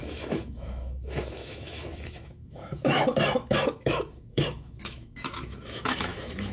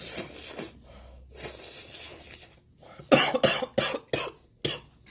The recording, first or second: second